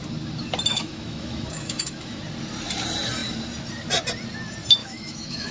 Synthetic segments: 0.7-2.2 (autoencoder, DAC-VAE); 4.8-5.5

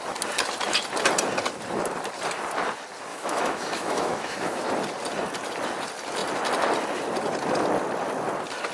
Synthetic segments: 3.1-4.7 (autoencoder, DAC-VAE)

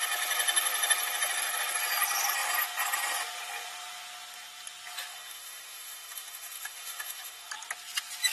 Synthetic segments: 5.1-7.5 (autoencoder, DAC-VAE)

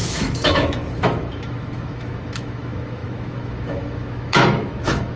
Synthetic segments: 0.0-5.2 (autoencoder, DAC-VAE)